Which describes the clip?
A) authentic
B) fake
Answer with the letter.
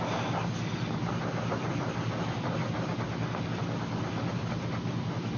A